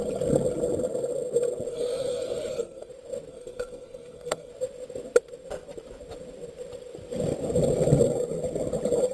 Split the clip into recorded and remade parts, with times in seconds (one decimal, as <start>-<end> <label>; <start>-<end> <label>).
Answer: 0.0-1.7 recorded; 1.7-2.9 remade; 2.9-3.3 recorded; 3.3-4.5 remade; 4.5-9.1 recorded

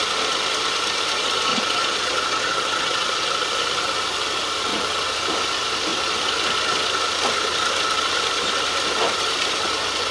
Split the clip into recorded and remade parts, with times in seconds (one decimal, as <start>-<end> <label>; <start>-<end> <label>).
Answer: 0.0-1.5 recorded; 1.5-3.1 remade; 3.1-10.1 recorded